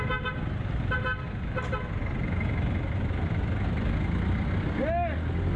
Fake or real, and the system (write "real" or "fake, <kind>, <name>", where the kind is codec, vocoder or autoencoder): real